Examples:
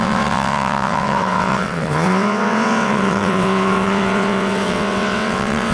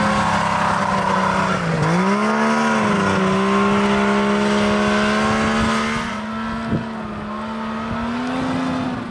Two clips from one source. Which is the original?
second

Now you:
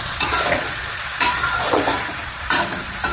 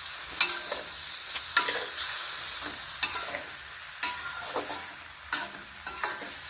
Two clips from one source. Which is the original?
second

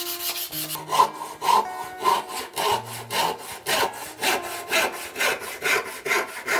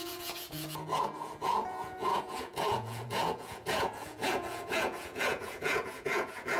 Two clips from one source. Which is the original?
first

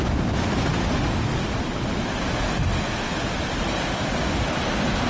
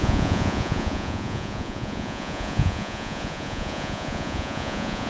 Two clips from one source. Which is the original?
first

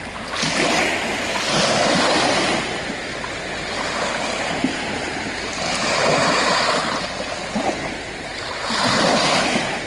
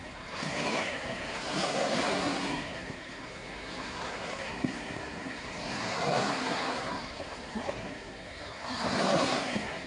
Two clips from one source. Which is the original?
first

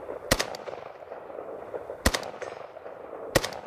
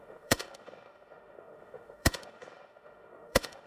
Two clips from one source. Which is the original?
first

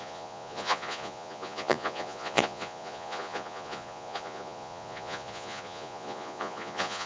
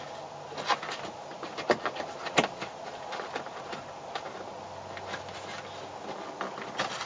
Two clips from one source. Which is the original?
second